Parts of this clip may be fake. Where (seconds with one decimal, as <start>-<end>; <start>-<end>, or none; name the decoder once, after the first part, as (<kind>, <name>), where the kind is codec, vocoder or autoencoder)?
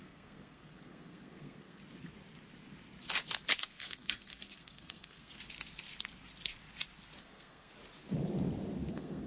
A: 0.0-1.8 (codec, SNAC); 3.6-5.3; 7.2-7.7; 8.9-9.3